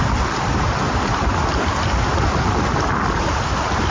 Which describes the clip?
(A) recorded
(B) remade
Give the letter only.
A